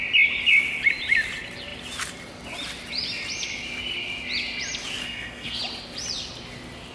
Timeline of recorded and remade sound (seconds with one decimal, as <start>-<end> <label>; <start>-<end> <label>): 0.0-5.0 recorded; 5.0-5.6 remade; 5.6-6.9 recorded